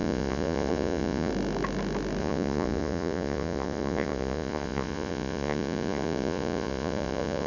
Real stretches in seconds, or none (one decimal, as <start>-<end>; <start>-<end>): 1.3-2.2